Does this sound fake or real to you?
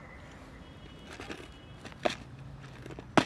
real